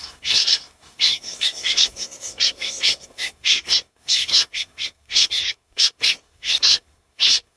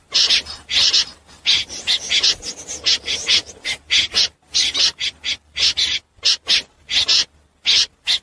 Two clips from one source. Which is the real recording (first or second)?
second